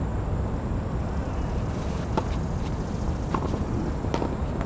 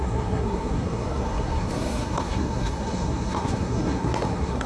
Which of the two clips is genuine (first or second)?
first